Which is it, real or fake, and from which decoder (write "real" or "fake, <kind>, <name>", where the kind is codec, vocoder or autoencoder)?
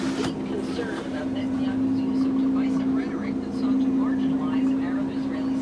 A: real